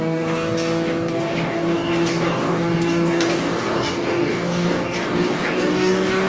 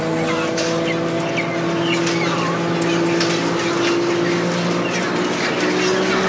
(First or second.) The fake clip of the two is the first